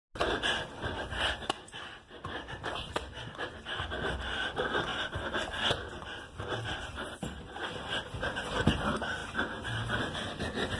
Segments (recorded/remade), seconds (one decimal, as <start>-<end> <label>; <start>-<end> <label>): 0.0-10.8 recorded